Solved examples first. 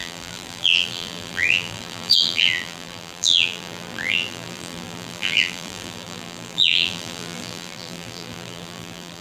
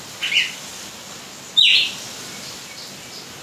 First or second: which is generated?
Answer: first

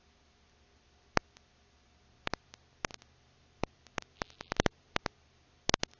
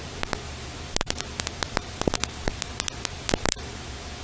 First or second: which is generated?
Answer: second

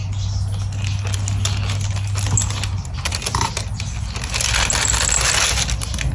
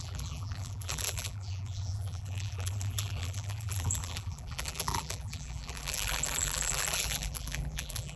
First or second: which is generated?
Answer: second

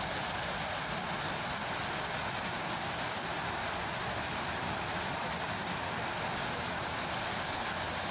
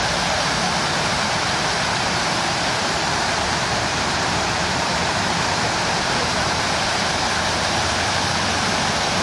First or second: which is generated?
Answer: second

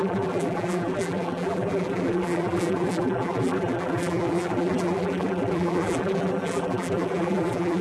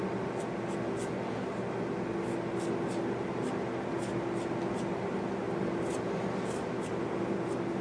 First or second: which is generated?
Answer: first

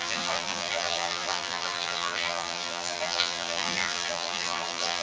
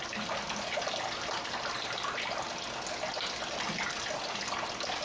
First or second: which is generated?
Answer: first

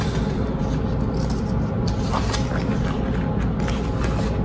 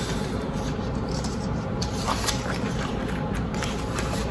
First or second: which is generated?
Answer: second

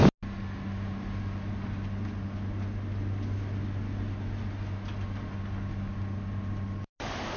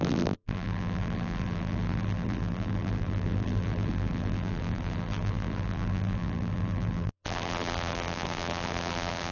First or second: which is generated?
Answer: second